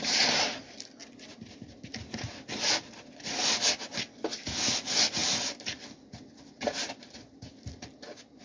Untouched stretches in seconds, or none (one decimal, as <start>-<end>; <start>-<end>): 0.0-8.4